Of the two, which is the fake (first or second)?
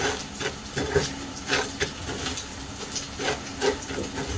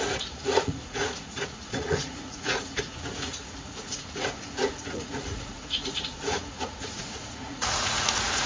second